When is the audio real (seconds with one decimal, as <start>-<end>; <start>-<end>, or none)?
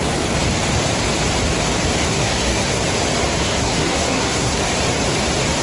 0.0-2.0; 2.8-3.4; 4.6-5.6